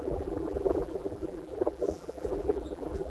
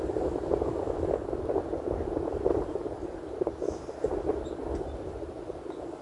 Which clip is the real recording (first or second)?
second